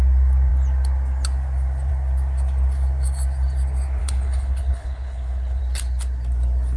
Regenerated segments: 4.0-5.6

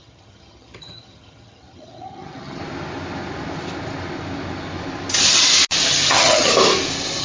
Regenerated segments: 0.0-2.6; 5.9-6.5